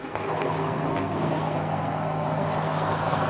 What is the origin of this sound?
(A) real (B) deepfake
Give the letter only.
B